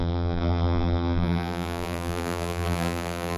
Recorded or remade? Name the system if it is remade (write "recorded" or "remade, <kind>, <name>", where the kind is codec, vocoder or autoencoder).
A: remade, vocoder, BigVGAN v2